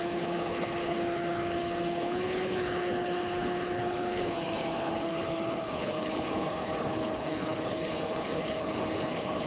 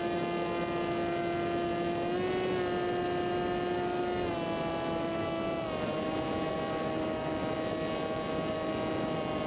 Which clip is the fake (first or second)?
first